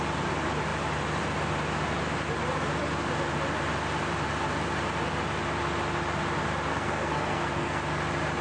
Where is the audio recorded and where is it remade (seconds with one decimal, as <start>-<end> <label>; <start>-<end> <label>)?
0.0-6.7 recorded; 6.7-7.8 remade; 7.8-8.4 recorded